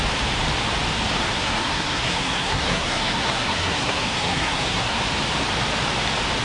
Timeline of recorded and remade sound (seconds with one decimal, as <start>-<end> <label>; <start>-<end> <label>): 0.0-1.2 recorded; 1.2-5.0 remade; 5.0-6.4 recorded